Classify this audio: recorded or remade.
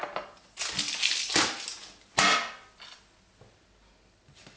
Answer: recorded